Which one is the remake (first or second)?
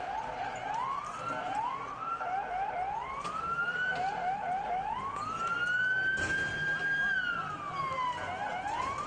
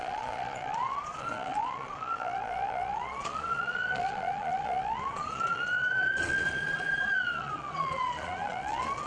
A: second